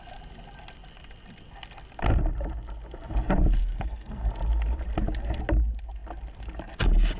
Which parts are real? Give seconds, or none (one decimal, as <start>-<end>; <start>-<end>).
0.0-3.6; 4.3-7.2